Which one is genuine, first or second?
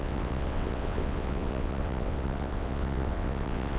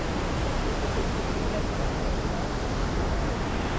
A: second